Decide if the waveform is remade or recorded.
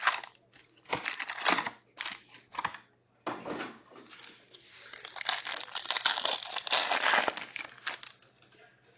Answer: recorded